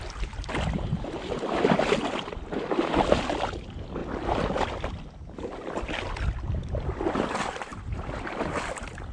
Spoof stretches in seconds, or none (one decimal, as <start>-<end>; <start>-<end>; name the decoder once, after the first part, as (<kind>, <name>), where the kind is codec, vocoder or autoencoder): 4.0-4.9 (vocoder, BigVGAN v2); 7.7-8.6

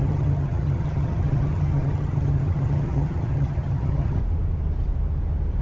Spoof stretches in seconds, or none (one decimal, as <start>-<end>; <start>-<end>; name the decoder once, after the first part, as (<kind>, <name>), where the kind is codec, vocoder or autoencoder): 0.0-4.2 (vocoder, HiFi-GAN)

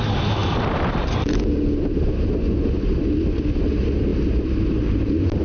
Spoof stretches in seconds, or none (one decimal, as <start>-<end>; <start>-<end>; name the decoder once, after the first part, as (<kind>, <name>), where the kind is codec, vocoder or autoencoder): none

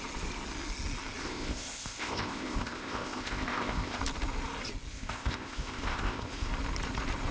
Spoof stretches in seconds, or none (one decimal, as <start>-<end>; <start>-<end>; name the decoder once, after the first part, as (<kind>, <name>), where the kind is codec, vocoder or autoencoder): 1.2-4.0 (codec, ZipCodec); 4.9-6.5

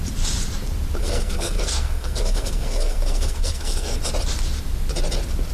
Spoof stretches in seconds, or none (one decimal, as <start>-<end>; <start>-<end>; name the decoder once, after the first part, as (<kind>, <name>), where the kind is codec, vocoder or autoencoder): 1.0-4.0 (codec, SNAC)